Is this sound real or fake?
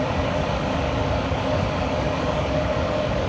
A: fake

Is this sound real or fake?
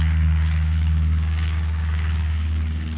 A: fake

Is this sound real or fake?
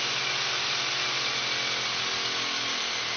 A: real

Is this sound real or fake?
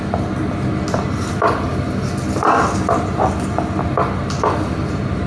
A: real